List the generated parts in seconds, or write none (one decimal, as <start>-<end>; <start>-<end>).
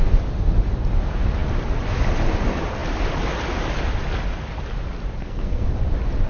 5.2-5.7